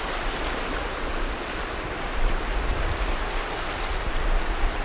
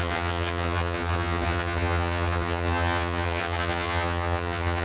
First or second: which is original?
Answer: first